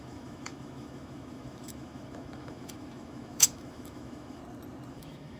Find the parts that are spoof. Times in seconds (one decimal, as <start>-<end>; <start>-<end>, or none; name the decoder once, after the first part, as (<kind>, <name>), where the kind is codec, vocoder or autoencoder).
0.0-4.4 (autoencoder, DAC-VAE); 4.9-5.4